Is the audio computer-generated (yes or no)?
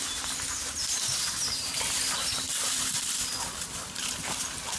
no